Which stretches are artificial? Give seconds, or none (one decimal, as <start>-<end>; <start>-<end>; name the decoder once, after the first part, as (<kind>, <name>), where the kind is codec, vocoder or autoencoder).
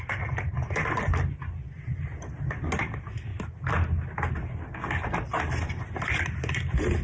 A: none